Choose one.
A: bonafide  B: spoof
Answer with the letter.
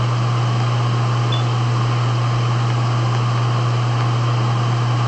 A